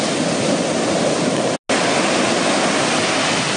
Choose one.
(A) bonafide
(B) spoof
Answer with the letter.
A